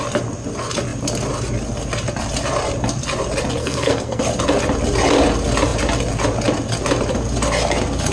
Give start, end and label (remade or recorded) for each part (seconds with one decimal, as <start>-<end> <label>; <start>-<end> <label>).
0.0-3.6 recorded; 3.6-4.2 remade; 4.2-8.1 recorded